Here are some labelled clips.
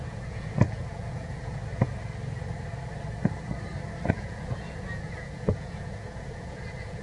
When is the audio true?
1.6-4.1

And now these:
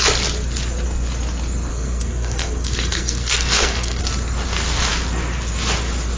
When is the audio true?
0.0-1.7; 4.0-6.2

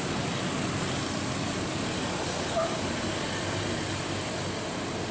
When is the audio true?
0.0-2.0; 3.1-5.1

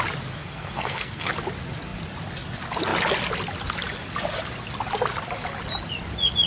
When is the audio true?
0.0-0.4; 1.3-6.5

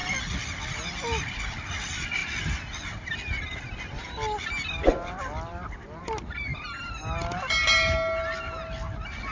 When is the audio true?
0.0-9.3